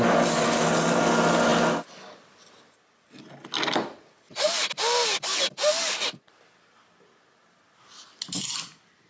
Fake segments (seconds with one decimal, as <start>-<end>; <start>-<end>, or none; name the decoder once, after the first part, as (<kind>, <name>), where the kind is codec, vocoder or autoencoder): none